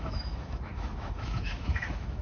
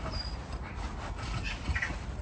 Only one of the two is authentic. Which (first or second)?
second